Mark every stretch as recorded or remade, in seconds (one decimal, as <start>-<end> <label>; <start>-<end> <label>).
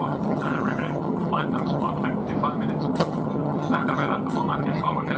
0.0-2.2 remade; 2.2-2.8 recorded; 2.8-5.2 remade